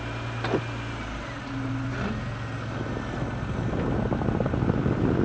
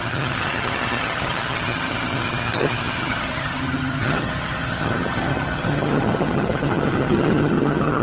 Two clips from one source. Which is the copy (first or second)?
second